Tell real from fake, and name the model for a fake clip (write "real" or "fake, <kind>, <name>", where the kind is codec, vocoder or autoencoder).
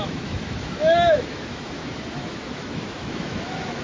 fake, autoencoder, DAC-VAE